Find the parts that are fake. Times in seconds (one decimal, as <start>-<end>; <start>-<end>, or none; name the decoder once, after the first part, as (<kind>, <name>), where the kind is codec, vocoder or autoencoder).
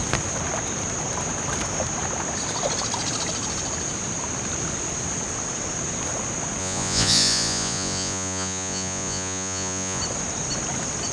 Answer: 6.6-10.0 (vocoder, Vocos)